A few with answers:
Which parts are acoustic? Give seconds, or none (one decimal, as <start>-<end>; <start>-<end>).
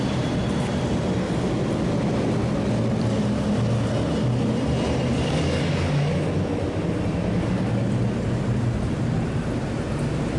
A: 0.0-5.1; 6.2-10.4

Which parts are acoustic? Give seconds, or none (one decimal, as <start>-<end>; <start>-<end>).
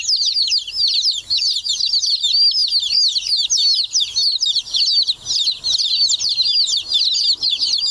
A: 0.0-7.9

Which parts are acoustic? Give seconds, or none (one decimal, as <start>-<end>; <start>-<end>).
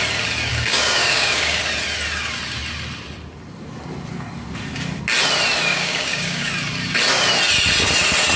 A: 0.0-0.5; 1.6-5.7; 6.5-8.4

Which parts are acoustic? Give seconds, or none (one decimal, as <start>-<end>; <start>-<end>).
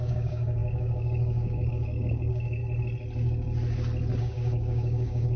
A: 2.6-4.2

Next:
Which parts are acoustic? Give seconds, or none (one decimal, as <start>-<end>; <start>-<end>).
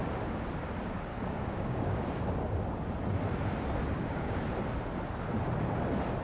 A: 0.0-1.1; 2.1-3.8; 4.4-6.2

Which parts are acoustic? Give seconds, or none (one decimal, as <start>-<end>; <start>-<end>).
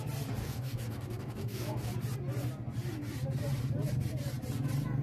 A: 0.0-0.4; 1.9-5.0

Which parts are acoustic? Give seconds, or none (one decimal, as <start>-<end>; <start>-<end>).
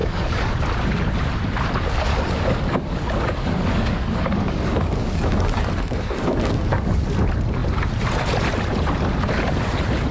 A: 0.5-2.1; 7.0-10.1